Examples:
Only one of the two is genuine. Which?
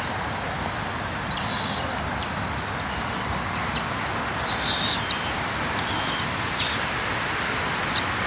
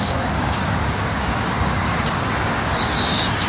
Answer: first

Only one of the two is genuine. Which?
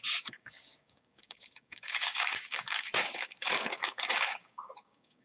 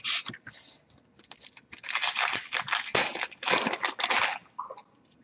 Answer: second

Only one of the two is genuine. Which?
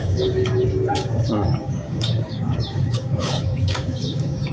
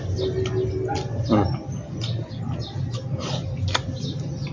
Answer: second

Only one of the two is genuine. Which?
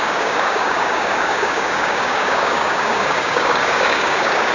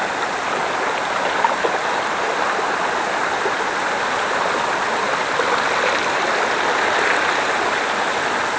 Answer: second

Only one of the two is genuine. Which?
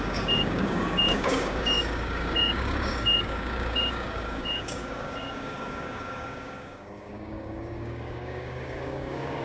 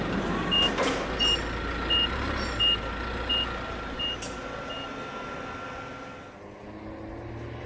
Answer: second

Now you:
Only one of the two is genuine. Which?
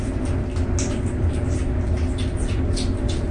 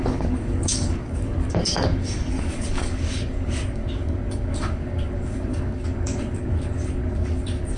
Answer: first